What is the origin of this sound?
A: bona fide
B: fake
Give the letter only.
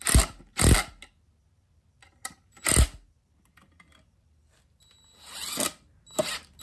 A